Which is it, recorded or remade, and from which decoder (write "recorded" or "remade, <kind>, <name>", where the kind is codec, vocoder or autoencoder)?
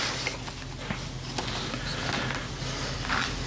recorded